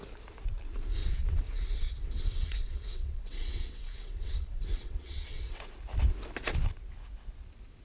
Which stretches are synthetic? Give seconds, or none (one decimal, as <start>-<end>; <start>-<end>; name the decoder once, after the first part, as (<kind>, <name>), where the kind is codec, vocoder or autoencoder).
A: 1.0-5.6 (vocoder, WaveNeXt)

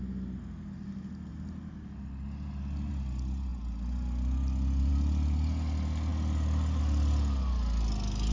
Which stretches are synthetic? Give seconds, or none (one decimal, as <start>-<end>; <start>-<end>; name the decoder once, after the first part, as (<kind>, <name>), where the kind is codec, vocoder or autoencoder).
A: none

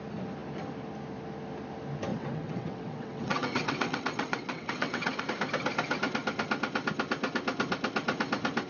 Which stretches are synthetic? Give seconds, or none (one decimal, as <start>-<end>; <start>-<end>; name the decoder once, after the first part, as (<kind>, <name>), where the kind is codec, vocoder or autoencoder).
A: 2.1-5.2 (vocoder, WaveNeXt)

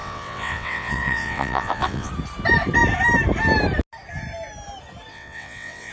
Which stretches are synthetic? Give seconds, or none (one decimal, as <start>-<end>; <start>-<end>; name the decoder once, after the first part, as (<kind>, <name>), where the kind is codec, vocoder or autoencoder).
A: 0.0-2.1 (vocoder, WaveNeXt); 5.1-5.9

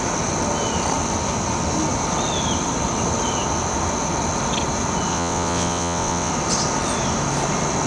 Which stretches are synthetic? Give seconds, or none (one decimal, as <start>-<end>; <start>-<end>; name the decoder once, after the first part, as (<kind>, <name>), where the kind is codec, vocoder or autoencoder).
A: 5.1-6.3 (vocoder, WaveNeXt)

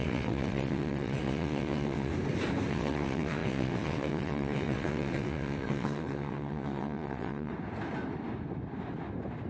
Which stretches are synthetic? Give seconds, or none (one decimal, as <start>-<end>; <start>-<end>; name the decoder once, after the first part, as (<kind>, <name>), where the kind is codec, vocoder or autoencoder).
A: 0.0-2.1 (vocoder, WaveNeXt); 2.7-7.5